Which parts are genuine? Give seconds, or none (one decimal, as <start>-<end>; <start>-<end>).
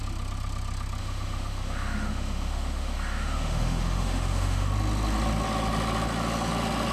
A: 0.0-1.0; 4.7-6.9